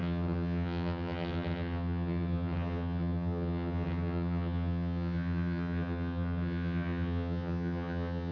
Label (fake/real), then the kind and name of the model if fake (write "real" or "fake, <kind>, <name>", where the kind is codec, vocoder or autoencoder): fake, vocoder, HiFi-GAN